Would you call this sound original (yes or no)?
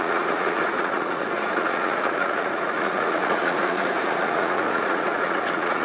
no